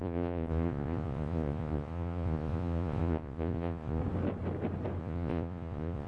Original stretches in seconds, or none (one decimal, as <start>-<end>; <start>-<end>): 4.0-5.0